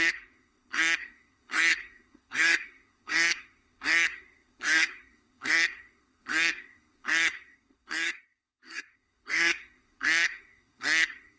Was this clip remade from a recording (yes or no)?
yes